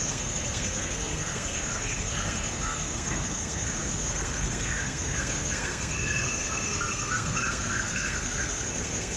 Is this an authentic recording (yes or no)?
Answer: no